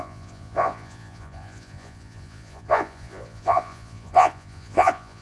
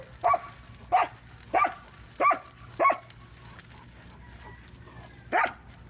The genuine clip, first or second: second